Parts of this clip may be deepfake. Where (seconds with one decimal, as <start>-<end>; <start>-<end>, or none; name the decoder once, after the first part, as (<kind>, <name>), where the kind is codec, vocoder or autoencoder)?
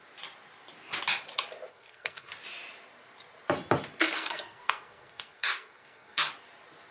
1.7-2.3 (codec, SNAC); 4.0-6.3